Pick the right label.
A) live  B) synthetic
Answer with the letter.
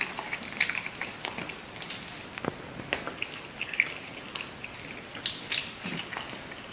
A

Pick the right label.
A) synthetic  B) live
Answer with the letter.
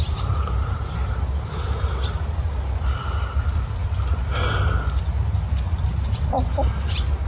B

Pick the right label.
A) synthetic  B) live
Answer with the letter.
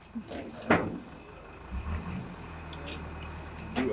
B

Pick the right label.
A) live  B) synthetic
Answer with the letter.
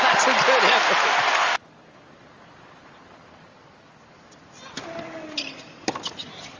A